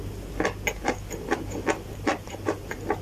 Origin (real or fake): real